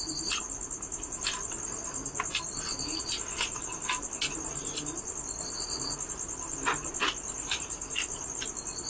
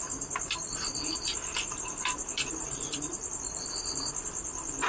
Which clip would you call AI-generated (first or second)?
second